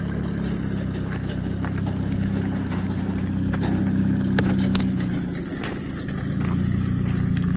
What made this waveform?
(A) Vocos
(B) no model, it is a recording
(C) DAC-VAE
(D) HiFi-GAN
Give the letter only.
B